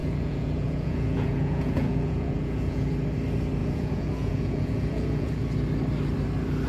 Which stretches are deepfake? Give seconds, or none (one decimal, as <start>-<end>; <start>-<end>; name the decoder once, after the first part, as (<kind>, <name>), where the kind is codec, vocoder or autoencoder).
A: 0.0-2.9 (vocoder, Vocos); 3.6-5.4